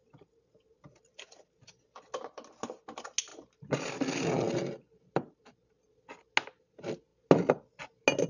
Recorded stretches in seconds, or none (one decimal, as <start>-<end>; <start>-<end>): 0.0-8.3